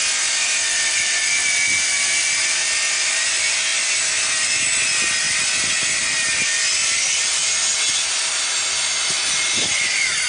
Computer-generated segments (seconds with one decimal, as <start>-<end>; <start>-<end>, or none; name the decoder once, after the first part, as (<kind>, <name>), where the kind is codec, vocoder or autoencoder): none